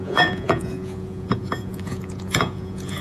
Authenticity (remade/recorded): remade